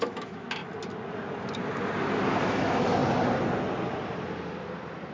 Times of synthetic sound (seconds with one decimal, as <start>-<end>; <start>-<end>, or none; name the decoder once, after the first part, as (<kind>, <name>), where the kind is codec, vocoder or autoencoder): 0.0-0.6 (autoencoder, DAC-VAE); 2.4-3.0